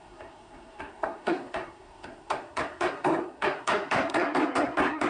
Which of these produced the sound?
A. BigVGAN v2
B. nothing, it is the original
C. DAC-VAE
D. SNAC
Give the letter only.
D